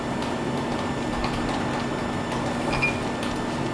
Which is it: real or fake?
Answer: real